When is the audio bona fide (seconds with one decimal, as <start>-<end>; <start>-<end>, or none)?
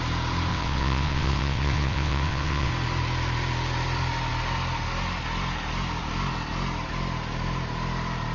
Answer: 0.0-0.5; 2.7-8.3